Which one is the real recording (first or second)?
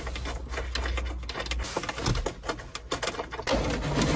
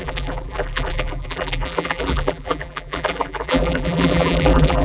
first